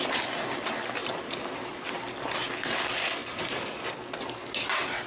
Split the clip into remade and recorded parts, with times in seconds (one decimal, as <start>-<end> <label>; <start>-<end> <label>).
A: 0.0-5.1 recorded